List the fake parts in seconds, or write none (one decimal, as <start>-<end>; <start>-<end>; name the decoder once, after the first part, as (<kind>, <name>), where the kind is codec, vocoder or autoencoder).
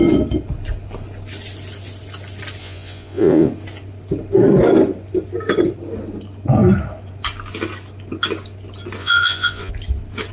2.6-3.5 (vocoder, Vocos); 9.0-9.7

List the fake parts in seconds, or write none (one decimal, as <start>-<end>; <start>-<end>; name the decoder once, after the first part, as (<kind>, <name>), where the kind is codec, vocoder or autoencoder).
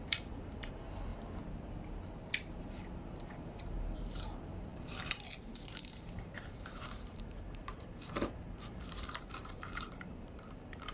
0.0-1.1 (vocoder, BigVGAN v2); 2.6-10.9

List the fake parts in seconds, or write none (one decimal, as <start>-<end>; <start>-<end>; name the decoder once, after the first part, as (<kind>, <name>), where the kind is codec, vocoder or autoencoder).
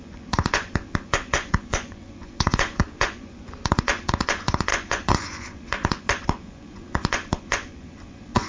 0.0-8.5 (vocoder, Vocos)